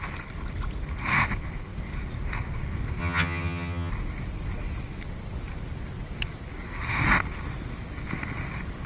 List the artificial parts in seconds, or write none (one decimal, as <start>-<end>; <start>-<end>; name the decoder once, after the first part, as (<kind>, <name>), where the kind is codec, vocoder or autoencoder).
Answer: 3.0-3.9 (vocoder, HiFi-GAN)